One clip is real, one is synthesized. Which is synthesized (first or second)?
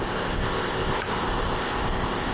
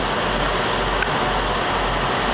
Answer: first